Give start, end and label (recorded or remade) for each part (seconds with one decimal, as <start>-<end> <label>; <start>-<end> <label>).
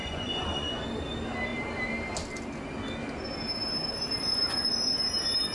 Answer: 0.0-0.8 remade; 0.8-4.3 recorded; 4.3-4.9 remade; 4.9-5.5 recorded